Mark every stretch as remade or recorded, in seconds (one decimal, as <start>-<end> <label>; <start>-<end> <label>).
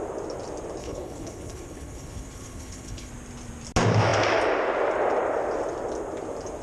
0.0-0.8 recorded; 0.8-3.1 remade; 3.1-6.6 recorded